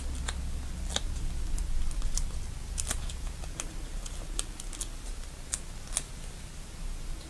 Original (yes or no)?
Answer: yes